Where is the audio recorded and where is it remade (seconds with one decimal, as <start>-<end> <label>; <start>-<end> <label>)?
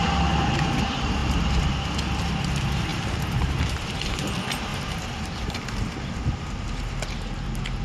0.0-2.9 recorded; 2.9-4.3 remade; 4.3-4.7 recorded; 4.7-5.6 remade; 5.6-7.8 recorded